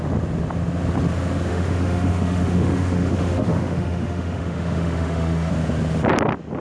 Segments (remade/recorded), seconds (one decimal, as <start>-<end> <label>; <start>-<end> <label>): 0.0-1.5 recorded; 1.5-5.5 remade; 5.5-6.6 recorded